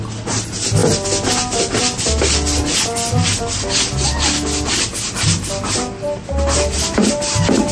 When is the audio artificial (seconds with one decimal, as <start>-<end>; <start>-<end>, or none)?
none